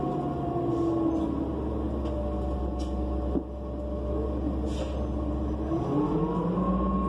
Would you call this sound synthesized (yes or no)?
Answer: no